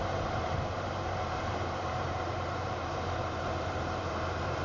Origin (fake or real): fake